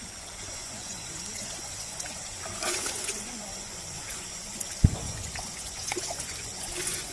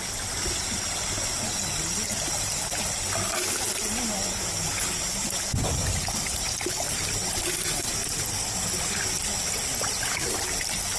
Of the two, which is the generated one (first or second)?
first